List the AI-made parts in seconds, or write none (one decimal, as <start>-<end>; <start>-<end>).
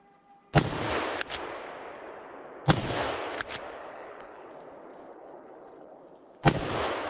3.8-4.5; 5.1-6.0